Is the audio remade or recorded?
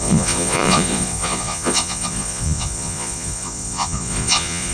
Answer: remade